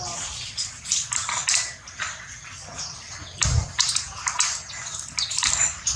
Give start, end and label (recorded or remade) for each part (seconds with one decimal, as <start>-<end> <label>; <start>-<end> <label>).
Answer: 0.0-6.0 recorded